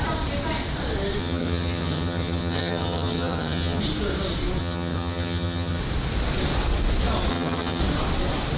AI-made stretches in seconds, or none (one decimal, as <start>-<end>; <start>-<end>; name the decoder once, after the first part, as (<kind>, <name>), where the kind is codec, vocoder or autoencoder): 1.2-3.8 (vocoder, HiFi-GAN); 4.6-5.8; 7.3-7.8